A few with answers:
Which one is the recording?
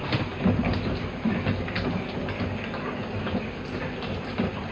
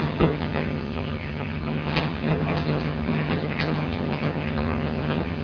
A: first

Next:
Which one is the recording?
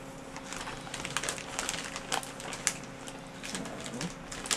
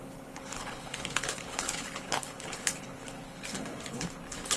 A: first